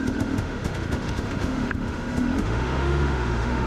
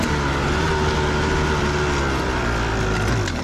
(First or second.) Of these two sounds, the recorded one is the second